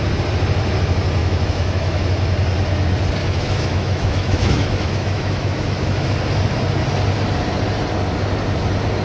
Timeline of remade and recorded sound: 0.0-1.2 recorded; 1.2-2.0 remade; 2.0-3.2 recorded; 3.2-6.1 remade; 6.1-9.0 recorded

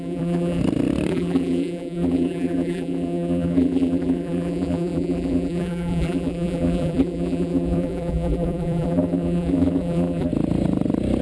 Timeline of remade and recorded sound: 0.0-0.6 remade; 0.6-1.1 recorded; 1.1-10.3 remade; 10.3-11.2 recorded